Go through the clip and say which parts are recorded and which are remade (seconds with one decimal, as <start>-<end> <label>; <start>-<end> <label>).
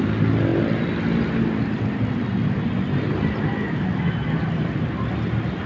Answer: 0.0-5.7 recorded